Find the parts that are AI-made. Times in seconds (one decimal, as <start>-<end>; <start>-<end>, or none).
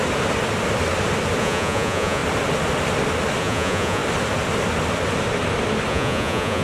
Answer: 1.4-2.2; 3.4-4.0; 5.9-6.6